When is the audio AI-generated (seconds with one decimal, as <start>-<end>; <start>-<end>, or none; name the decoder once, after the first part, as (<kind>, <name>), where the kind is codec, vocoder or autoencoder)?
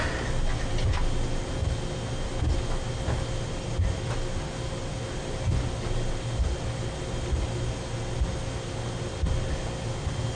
none